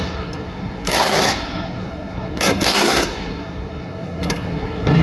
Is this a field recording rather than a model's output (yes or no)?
no